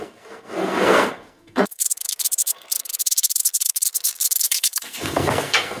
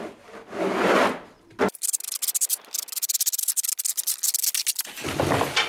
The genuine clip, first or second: second